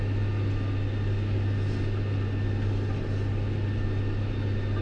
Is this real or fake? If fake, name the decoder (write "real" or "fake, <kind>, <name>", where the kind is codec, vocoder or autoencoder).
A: real